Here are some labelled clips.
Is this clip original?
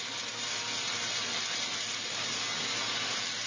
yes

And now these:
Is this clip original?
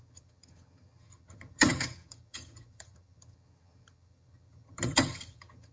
no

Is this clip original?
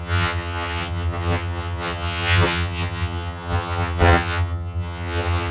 no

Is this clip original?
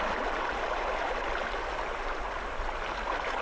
yes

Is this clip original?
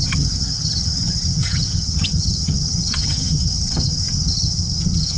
no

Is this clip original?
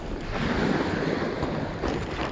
yes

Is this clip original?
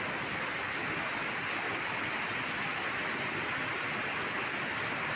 yes